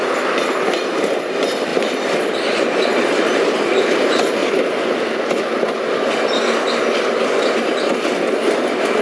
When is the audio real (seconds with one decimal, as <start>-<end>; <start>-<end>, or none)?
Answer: 0.0-1.7; 3.4-9.0